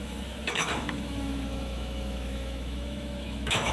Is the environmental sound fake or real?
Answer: fake